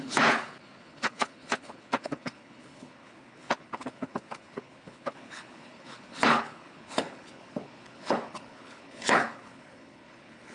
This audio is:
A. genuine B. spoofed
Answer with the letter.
B